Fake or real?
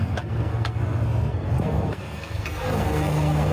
fake